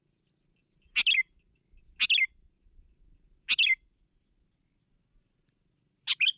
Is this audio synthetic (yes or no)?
no